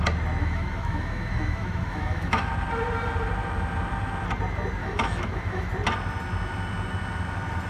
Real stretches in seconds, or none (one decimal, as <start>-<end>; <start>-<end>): 0.0-0.4; 2.5-4.8; 5.7-7.7